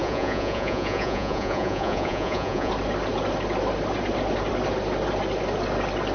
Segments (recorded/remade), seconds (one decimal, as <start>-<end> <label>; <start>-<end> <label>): 0.0-2.7 remade; 2.7-6.1 recorded